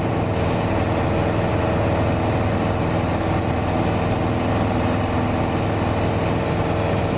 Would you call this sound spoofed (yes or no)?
no